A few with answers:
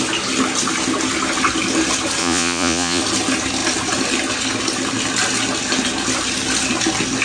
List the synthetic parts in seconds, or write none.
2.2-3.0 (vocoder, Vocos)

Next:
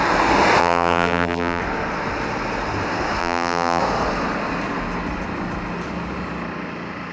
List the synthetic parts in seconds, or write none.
0.6-1.6 (vocoder, BigVGAN v2); 3.2-3.8

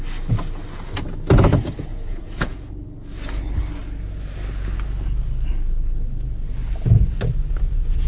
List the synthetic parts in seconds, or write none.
1.9-2.7 (vocoder, Vocos)

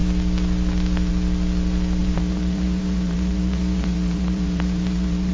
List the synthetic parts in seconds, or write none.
2.0-5.3 (vocoder, BigVGAN v2)

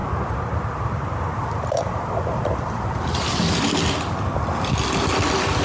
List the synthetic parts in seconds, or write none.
0.0-3.4 (vocoder, BigVGAN v2)

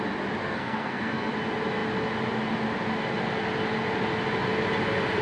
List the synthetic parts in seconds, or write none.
0.4-1.3 (codec, SNAC)

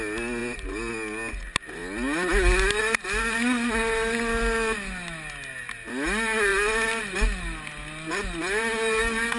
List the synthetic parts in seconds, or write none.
none

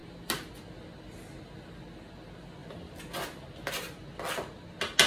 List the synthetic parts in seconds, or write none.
2.6-3.7 (vocoder, BigVGAN v2)